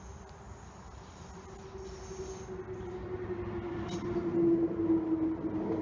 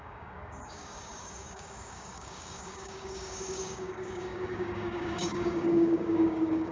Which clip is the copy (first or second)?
second